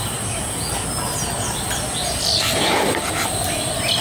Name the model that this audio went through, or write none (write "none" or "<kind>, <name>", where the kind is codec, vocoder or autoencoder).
none